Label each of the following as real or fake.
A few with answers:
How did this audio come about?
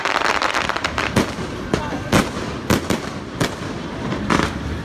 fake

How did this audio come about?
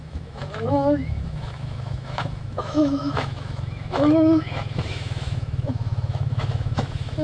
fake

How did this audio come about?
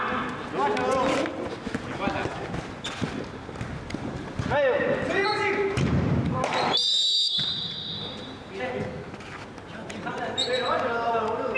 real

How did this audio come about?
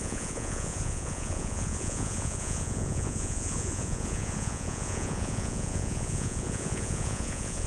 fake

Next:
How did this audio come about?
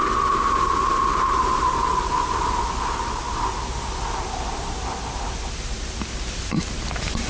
real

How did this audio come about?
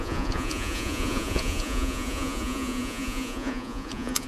fake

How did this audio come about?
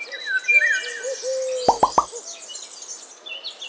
real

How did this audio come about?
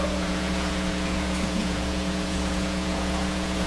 fake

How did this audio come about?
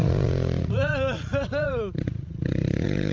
fake